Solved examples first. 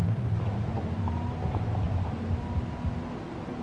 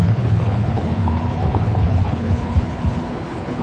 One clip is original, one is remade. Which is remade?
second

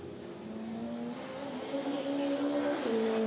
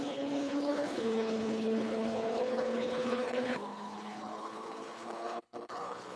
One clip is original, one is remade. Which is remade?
second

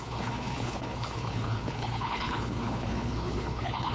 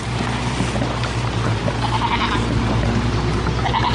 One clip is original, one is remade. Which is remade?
first